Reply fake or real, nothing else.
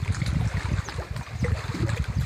real